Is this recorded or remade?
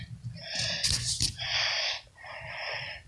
recorded